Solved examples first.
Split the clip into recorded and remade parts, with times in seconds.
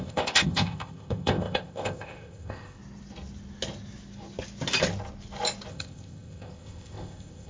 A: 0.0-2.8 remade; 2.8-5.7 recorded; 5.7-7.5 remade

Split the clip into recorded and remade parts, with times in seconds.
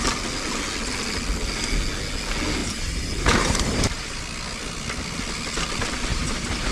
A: 0.0-2.6 recorded; 2.6-4.2 remade; 4.2-6.1 recorded; 6.1-6.7 remade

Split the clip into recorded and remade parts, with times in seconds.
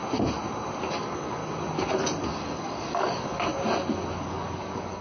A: 0.0-0.9 recorded; 0.9-1.4 remade; 1.4-2.2 recorded; 2.2-3.5 remade; 3.5-4.2 recorded; 4.2-5.0 remade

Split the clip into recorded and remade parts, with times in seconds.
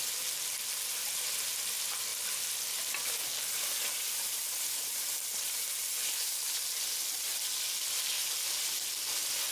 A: 0.0-9.5 recorded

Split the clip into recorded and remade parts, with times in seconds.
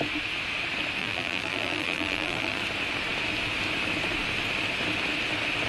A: 0.0-1.0 recorded; 1.0-2.6 remade; 2.6-5.7 recorded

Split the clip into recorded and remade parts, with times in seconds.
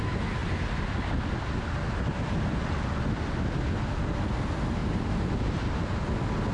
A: 0.0-4.8 recorded; 4.8-5.8 remade; 5.8-6.5 recorded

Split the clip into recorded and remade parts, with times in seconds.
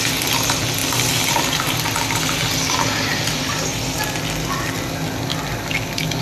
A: 0.0-6.2 recorded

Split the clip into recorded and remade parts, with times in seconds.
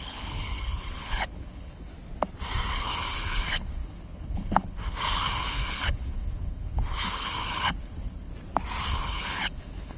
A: 0.0-1.9 remade; 1.9-2.7 recorded; 2.7-8.3 remade; 8.3-8.9 recorded; 8.9-10.0 remade